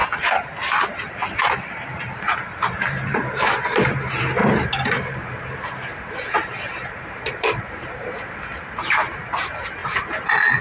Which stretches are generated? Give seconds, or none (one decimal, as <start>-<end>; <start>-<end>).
2.3-9.8